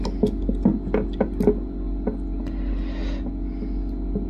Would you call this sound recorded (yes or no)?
yes